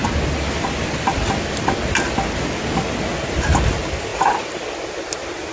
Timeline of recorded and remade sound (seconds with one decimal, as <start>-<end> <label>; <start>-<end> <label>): 0.0-5.5 recorded